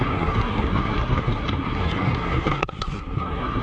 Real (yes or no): no